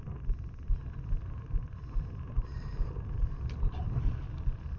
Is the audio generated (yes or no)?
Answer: no